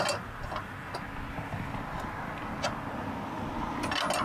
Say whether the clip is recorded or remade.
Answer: recorded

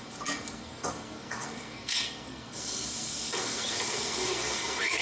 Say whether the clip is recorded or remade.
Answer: remade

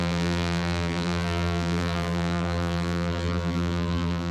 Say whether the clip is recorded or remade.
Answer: remade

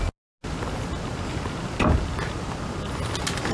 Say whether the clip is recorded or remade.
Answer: recorded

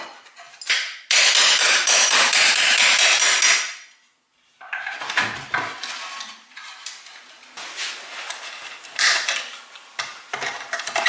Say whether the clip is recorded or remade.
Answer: recorded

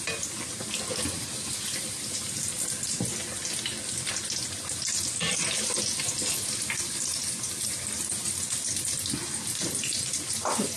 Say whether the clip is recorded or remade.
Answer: recorded